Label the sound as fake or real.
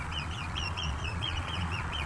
fake